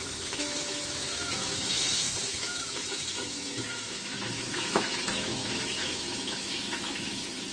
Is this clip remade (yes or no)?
yes